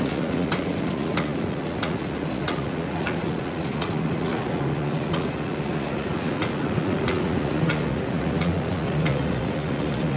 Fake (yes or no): yes